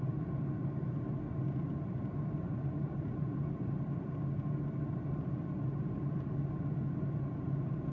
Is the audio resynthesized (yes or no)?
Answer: no